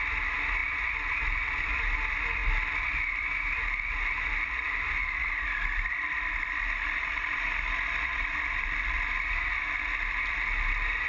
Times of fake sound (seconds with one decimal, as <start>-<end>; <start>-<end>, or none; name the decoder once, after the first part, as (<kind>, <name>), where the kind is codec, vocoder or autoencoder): none

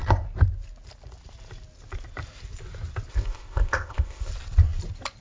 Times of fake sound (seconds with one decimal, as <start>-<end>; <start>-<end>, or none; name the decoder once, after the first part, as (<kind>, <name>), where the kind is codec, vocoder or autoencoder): 3.1-4.3 (codec, ZipCodec)

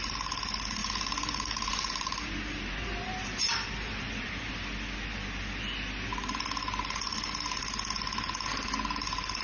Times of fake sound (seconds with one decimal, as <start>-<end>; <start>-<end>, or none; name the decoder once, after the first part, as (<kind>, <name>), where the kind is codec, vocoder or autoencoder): 0.8-4.5 (vocoder, BigVGAN v2)

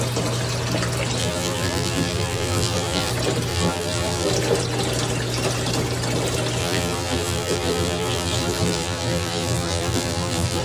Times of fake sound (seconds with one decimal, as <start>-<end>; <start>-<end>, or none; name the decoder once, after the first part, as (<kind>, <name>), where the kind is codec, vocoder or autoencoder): 1.2-3.1 (vocoder, BigVGAN v2); 3.5-4.3; 6.6-10.6

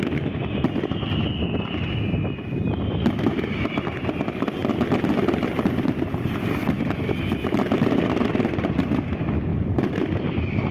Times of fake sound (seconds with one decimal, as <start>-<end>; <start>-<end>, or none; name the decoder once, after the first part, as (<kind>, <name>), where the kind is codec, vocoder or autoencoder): 4.6-8.3 (vocoder, BigVGAN v2); 9.5-10.1

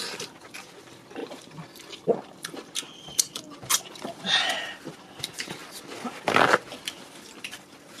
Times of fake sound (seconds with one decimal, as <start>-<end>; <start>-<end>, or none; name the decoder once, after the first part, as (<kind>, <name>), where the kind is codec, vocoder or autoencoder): 0.0-5.6 (vocoder, BigVGAN v2); 6.9-8.0